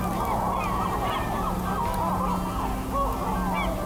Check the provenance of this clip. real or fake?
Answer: real